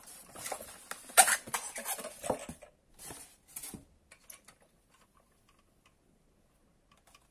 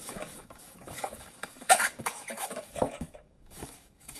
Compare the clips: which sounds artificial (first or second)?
second